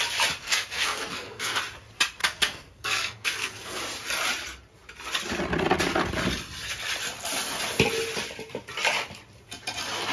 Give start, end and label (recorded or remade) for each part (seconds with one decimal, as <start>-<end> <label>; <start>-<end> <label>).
0.0-0.4 recorded; 0.4-1.6 remade; 1.6-2.2 recorded; 2.2-3.8 remade; 3.8-10.1 recorded